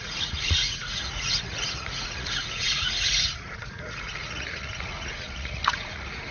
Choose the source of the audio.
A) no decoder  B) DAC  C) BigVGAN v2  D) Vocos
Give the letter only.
D